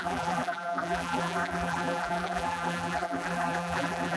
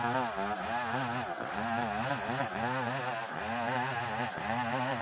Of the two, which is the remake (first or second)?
first